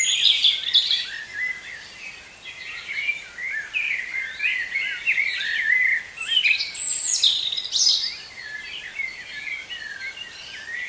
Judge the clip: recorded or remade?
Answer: remade